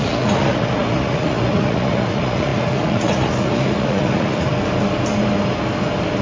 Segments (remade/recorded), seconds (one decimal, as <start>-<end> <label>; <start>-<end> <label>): 0.0-4.5 remade; 4.5-6.2 recorded

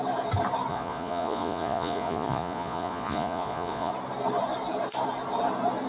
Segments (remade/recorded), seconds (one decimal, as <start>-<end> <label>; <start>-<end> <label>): 0.0-0.7 recorded; 0.7-3.9 remade; 3.9-5.9 recorded